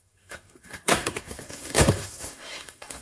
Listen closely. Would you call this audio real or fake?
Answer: fake